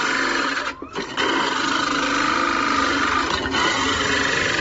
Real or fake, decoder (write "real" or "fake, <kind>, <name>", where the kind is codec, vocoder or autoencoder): real